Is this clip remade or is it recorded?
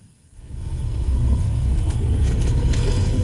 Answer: remade